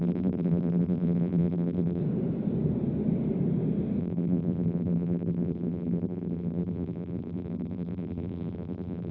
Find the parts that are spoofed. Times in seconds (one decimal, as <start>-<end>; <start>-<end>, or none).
0.0-2.0; 4.0-9.1